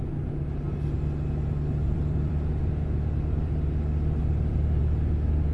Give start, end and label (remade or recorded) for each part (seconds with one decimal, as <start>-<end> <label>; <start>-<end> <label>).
0.0-1.8 recorded; 1.8-3.5 remade; 3.5-4.2 recorded; 4.2-4.8 remade; 4.8-5.5 recorded